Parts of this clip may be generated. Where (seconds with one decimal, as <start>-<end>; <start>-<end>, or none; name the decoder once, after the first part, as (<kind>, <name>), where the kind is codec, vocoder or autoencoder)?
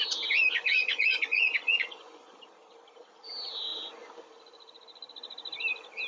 0.4-2.4 (vocoder, Vocos)